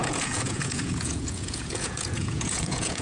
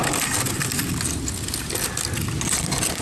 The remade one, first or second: first